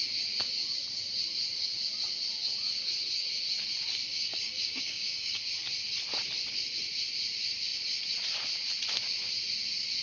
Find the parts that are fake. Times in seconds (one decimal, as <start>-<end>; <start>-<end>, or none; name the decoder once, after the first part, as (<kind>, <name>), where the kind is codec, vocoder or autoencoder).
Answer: 4.0-5.4 (codec, DAC)